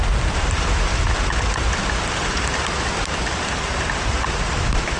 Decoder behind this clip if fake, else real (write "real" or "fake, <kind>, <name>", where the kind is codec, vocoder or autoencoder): real